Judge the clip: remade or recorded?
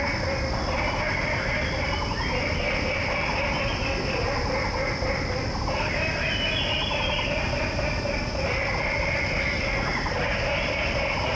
recorded